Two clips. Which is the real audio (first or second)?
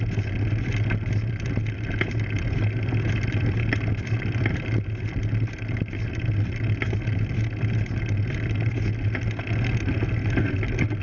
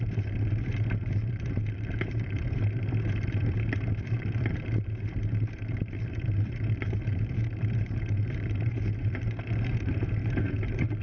first